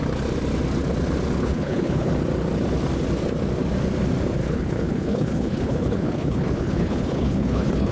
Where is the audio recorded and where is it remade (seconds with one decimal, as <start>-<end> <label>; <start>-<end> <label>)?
0.0-1.4 recorded; 1.4-2.1 remade; 2.1-4.4 recorded; 4.4-7.9 remade